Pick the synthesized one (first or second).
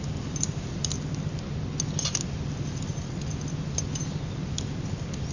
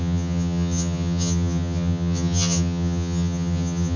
second